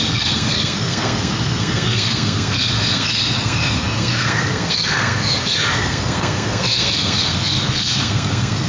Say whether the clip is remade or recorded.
remade